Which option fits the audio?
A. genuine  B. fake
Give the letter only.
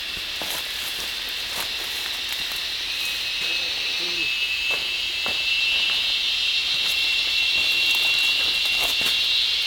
A